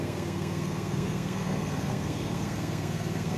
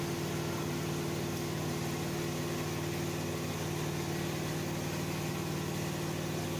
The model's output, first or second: first